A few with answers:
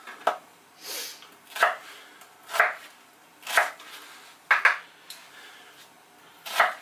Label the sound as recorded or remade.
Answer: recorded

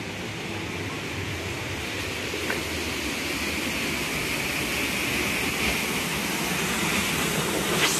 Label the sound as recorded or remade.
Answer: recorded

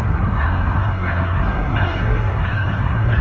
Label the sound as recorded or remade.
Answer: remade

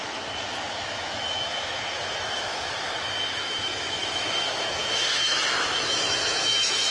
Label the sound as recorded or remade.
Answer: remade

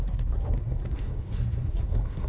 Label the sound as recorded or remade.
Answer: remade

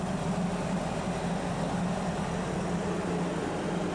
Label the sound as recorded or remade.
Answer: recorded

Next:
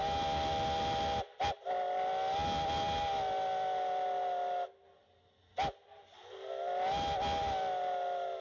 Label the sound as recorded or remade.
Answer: recorded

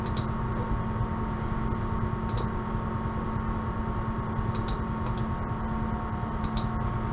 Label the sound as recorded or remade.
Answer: recorded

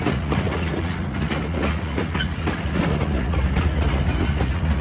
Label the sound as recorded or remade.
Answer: remade